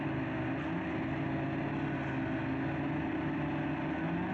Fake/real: real